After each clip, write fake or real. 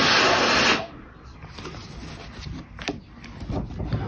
real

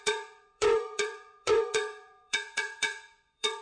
fake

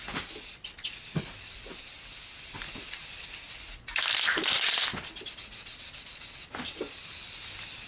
real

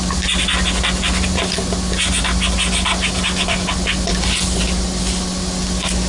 real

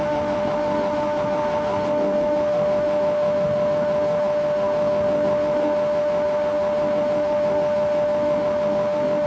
fake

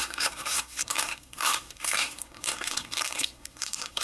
fake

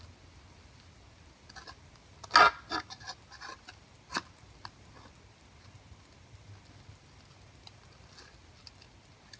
real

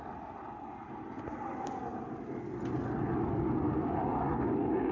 real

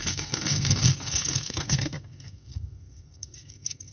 fake